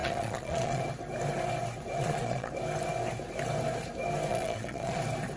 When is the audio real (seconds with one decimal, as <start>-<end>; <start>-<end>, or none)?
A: 0.8-2.0; 2.5-4.3; 5.0-5.4